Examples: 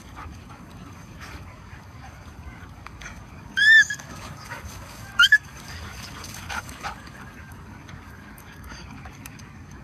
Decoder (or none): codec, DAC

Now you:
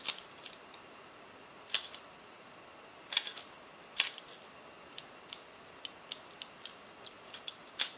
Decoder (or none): none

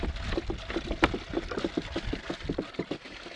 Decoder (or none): none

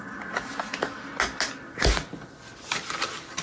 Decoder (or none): none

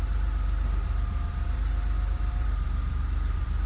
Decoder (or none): vocoder, BigVGAN v2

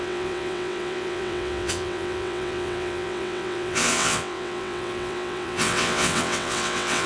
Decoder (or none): vocoder, WaveNeXt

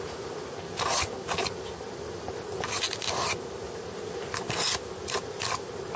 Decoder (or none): none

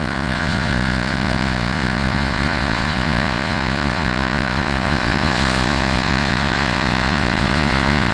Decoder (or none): vocoder, Vocos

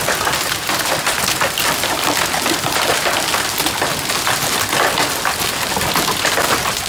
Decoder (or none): none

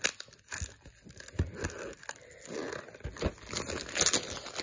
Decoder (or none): none